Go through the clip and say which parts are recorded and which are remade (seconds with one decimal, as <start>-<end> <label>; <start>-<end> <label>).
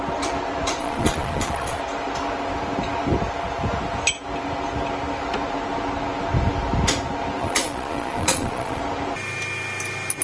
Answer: 0.0-0.8 recorded; 0.8-1.8 remade; 1.8-7.4 recorded; 7.4-8.8 remade; 8.8-10.2 recorded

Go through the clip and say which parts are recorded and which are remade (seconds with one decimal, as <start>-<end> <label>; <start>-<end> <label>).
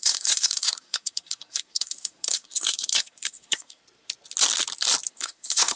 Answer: 0.0-3.8 remade; 3.8-5.1 recorded; 5.1-5.8 remade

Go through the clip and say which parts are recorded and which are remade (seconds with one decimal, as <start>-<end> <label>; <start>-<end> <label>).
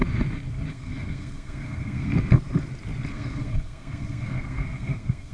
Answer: 0.0-0.7 recorded; 0.7-2.1 remade; 2.1-3.1 recorded; 3.1-5.3 remade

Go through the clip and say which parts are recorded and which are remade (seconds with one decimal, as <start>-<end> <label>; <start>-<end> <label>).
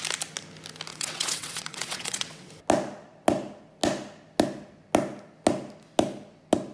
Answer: 0.0-0.9 recorded; 0.9-2.5 remade; 2.5-6.7 recorded